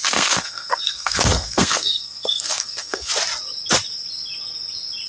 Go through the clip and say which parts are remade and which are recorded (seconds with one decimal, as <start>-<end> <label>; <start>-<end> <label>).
0.0-3.1 remade; 3.1-5.1 recorded